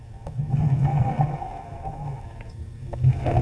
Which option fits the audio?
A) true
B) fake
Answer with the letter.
B